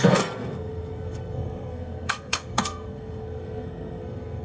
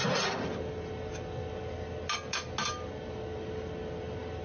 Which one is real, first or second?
second